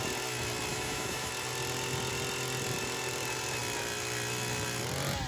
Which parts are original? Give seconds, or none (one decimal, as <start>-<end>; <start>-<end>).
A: 0.0-0.7; 1.3-5.3

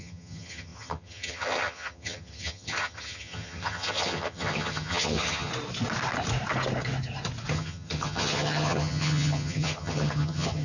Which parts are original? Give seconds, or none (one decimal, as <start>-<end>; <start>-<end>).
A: 5.5-7.5

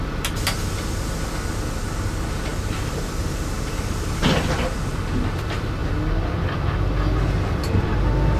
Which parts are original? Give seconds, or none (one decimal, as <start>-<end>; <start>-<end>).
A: 0.0-2.5; 4.2-8.4

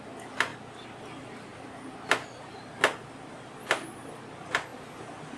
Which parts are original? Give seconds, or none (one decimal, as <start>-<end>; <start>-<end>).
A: 0.0-5.4

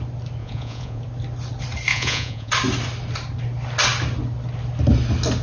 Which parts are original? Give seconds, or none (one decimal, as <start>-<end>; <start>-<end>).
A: 0.0-0.4; 1.0-1.9; 2.5-5.4

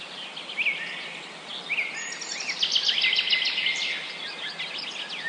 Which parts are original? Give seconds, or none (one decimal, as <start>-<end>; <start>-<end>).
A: 0.0-5.3

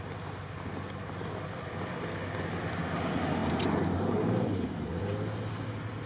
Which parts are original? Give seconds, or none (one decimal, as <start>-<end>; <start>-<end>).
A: 0.0-3.4; 5.0-6.1